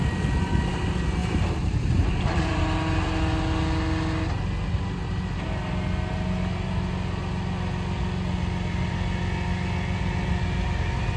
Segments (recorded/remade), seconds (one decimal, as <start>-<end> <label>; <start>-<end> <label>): 0.0-1.2 recorded; 1.2-2.6 remade; 2.6-11.2 recorded

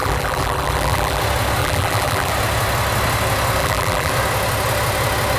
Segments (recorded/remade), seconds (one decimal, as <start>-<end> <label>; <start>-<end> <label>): 0.0-1.2 remade; 1.2-1.6 recorded; 1.6-2.3 remade; 2.3-3.6 recorded; 3.6-4.1 remade; 4.1-5.4 recorded

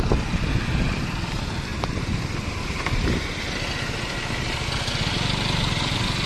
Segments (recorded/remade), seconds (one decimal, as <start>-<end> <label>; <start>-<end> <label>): 0.0-1.7 recorded; 1.7-2.6 remade; 2.6-6.3 recorded

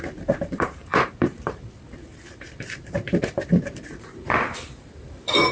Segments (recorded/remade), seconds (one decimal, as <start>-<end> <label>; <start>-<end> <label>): 0.0-5.5 remade

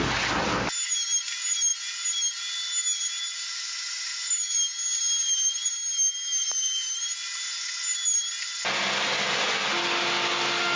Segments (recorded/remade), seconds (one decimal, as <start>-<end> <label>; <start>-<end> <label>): 0.0-10.8 recorded

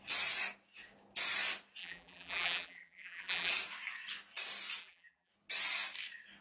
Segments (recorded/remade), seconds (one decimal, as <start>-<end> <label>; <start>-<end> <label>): 0.0-1.8 recorded; 1.8-3.5 remade; 3.5-4.8 recorded; 4.8-5.3 remade; 5.3-6.4 recorded